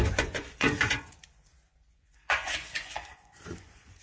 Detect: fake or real fake